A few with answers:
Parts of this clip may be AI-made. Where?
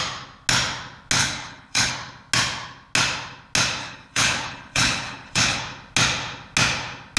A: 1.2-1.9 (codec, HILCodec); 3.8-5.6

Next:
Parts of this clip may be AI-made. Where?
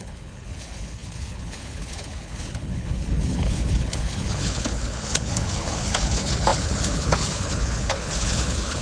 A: 0.0-8.8 (codec, HILCodec)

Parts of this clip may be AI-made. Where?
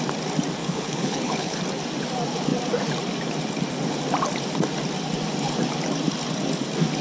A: 0.6-1.6 (codec, HILCodec)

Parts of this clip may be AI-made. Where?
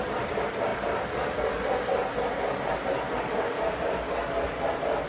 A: none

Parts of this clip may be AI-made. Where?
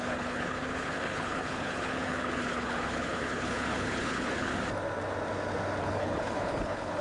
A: 0.0-4.5 (codec, HILCodec); 5.8-7.0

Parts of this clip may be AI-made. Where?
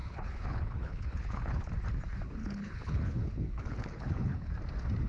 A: 0.0-1.7 (codec, HILCodec); 2.4-4.5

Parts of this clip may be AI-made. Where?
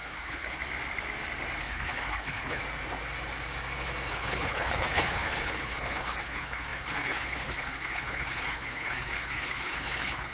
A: 0.0-0.6 (codec, HILCodec); 1.6-2.6; 4.1-10.3